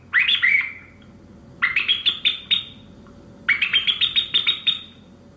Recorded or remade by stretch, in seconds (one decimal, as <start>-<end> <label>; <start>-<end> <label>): 0.0-5.4 recorded